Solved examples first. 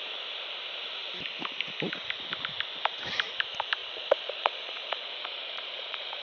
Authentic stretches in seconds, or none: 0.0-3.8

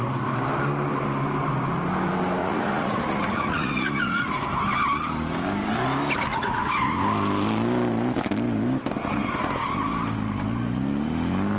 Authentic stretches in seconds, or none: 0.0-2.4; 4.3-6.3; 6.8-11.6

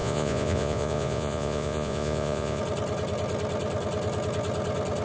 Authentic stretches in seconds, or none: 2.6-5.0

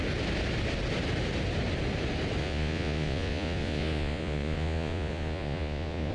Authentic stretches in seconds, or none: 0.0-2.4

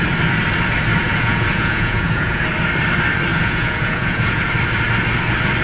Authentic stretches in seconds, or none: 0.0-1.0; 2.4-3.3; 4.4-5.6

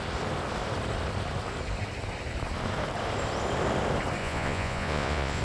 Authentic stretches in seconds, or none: 0.0-4.2

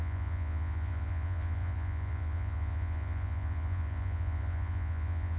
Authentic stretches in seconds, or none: none